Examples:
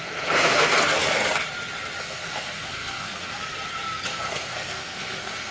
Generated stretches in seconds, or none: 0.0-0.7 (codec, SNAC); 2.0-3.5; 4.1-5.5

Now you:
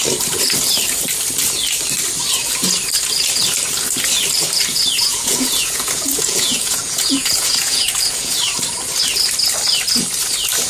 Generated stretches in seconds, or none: 4.7-8.4 (vocoder, Vocos)

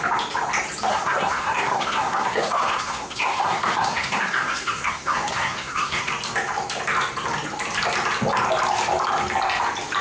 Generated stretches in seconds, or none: 0.9-6.1 (codec, SNAC)

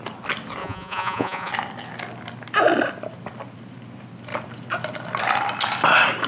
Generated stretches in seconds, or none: 0.6-1.5 (vocoder, Vocos)

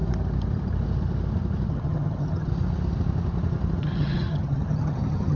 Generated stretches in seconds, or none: 1.7-2.5 (vocoder, HiFi-GAN); 3.8-5.4

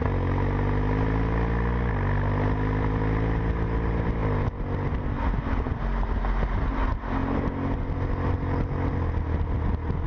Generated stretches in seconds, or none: none

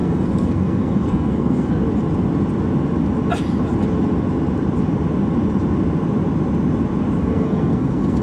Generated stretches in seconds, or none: 0.0-1.7 (codec, SNAC); 7.2-8.2